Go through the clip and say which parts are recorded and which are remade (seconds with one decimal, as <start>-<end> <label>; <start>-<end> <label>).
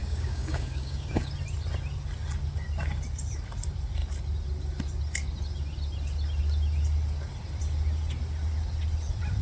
0.0-1.3 remade; 1.3-9.4 recorded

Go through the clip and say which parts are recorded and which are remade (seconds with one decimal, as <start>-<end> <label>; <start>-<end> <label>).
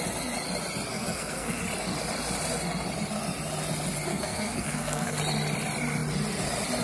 0.0-0.9 recorded; 0.9-1.6 remade; 1.6-4.1 recorded; 4.1-5.2 remade; 5.2-6.8 recorded